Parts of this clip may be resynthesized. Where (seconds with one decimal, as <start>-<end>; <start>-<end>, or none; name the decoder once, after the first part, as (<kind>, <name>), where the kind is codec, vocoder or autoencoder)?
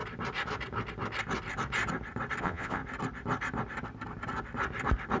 2.4-2.8 (vocoder, Vocos)